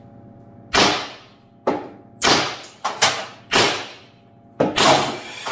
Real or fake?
real